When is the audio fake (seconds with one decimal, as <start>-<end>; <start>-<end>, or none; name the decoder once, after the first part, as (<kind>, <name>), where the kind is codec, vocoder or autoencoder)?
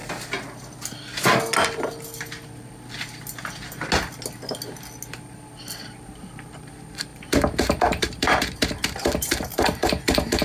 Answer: 5.1-10.4 (vocoder, BigVGAN v2)